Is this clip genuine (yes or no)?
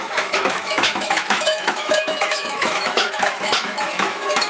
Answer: no